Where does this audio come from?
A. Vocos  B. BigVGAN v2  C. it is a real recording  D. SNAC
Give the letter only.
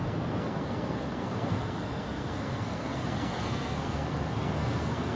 D